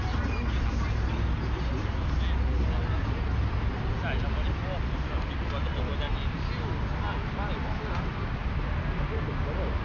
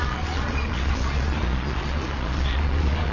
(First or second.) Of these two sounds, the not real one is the second